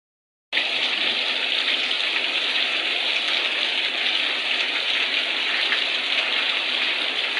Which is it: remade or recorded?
recorded